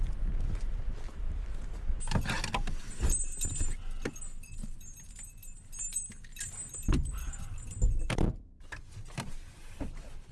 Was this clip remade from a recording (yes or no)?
no